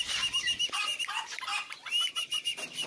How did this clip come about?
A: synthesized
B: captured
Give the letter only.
B